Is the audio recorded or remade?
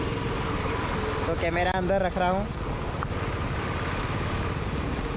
recorded